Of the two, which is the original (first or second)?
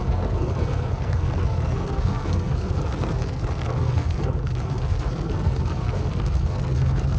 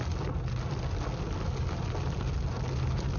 second